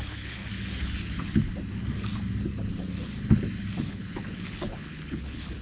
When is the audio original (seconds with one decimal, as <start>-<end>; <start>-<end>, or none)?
0.4-3.8